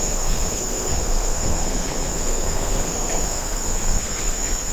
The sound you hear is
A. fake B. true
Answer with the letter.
A